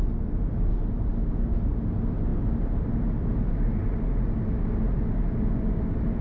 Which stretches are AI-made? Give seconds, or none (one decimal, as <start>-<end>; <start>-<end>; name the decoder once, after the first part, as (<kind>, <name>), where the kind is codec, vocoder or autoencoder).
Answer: none